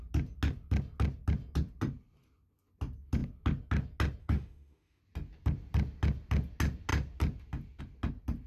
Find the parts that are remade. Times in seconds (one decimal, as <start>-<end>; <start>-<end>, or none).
4.2-5.0